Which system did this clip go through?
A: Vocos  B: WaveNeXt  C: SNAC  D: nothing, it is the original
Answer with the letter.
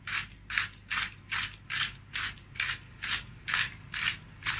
D